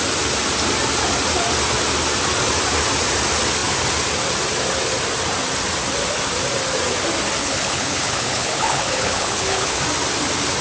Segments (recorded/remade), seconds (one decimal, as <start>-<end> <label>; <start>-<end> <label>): 0.0-7.4 recorded; 7.4-9.8 remade; 9.8-10.6 recorded